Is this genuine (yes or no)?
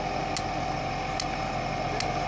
yes